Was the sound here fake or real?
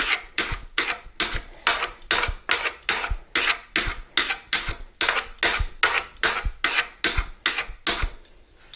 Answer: real